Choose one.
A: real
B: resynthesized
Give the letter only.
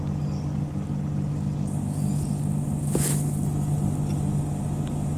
A